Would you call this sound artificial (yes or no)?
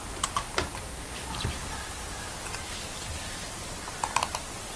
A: no